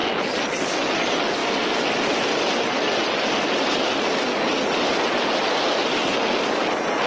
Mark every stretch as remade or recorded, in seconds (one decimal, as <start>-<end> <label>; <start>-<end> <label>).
0.0-7.1 recorded